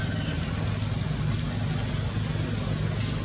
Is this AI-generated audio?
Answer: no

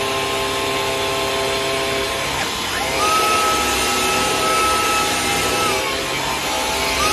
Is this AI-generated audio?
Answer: no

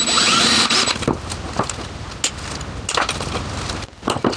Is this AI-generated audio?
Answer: no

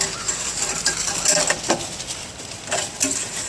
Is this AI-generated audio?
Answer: no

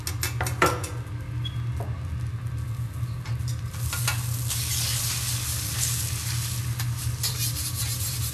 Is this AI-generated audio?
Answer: no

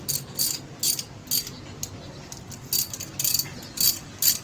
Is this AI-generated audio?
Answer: no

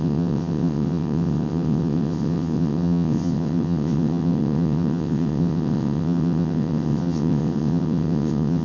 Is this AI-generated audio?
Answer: yes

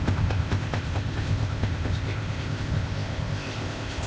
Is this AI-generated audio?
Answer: yes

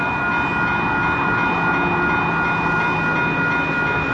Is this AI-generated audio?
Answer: no